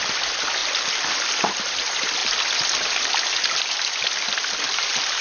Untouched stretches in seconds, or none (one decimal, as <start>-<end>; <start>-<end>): 0.0-5.2